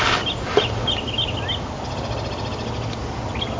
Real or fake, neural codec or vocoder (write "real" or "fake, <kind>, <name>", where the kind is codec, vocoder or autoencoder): real